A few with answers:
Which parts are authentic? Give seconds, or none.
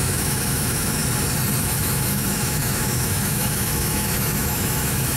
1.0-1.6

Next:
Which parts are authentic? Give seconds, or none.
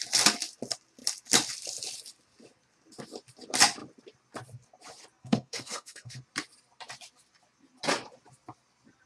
0.0-5.2; 6.2-9.1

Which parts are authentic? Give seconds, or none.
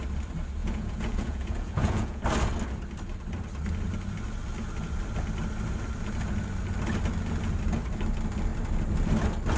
0.0-0.6; 2.2-9.6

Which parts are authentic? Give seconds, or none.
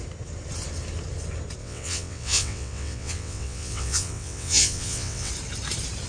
0.0-1.6; 5.3-6.1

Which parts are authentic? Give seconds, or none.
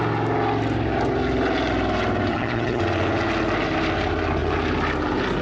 0.0-2.3; 2.8-5.4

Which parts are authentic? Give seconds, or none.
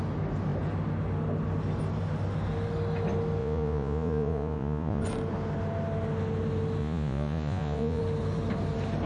0.0-3.4; 5.0-6.8; 8.0-9.1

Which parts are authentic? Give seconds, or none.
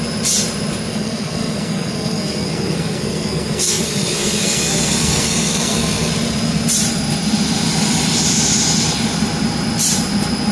0.0-0.9; 6.1-10.5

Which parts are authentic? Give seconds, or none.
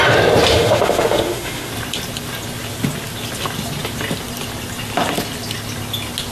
0.0-0.5; 1.7-6.3